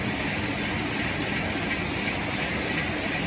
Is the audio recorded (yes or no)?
yes